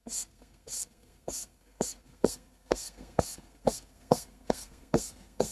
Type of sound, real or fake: fake